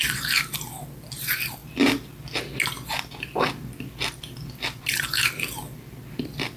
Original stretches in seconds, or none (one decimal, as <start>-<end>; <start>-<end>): 0.0-6.6